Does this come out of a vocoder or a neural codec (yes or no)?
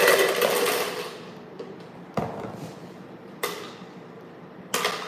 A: no